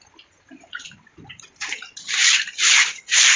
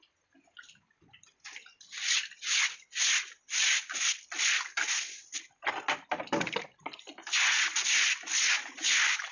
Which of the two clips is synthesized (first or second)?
first